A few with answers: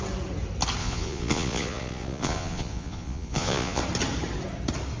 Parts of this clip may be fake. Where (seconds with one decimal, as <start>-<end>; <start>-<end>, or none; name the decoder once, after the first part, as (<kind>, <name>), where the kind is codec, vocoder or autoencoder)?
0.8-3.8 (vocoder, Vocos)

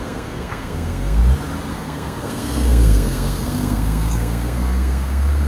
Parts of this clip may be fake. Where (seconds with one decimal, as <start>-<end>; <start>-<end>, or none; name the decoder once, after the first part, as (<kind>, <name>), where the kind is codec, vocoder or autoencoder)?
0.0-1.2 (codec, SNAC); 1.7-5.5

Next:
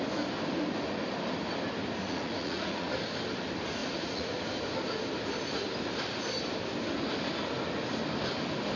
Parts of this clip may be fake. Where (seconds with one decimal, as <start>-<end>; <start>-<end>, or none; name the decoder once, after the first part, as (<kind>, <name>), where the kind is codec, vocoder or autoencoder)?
2.0-2.9 (vocoder, Vocos); 3.8-4.3

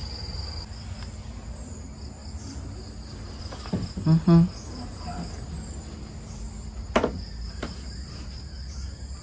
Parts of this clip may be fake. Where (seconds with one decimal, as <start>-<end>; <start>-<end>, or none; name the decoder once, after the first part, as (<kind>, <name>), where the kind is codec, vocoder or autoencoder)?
none

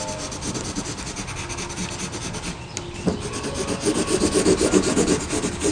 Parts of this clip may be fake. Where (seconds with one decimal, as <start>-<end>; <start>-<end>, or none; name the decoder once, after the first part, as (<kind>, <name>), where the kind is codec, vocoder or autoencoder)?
none

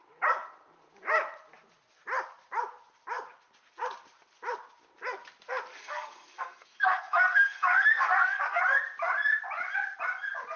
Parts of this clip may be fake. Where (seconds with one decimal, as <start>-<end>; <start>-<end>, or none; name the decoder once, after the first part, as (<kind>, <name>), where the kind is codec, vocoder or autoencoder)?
5.7-8.6 (codec, SNAC)

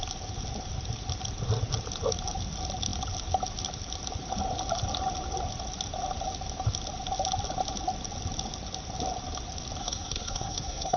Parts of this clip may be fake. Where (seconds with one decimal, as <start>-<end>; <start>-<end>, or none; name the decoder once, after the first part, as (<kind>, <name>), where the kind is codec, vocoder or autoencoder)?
9.8-11.0 (codec, SNAC)